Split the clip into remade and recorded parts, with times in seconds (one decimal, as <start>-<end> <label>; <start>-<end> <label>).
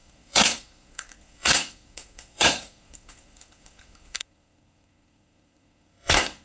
0.0-6.4 remade